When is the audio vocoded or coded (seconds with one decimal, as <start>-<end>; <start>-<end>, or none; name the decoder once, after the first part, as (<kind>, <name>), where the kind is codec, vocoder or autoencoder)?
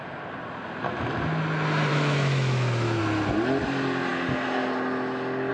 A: 1.9-3.0 (autoencoder, DAC-VAE)